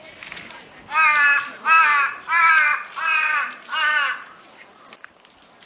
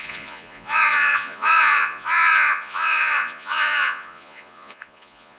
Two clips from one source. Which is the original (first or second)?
first